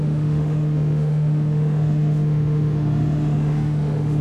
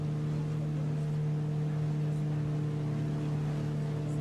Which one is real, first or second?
second